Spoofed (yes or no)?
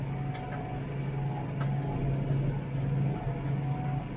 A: no